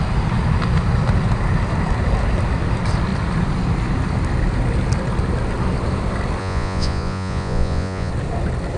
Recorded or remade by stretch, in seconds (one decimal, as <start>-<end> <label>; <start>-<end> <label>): 0.0-6.4 recorded; 6.4-8.1 remade; 8.1-8.8 recorded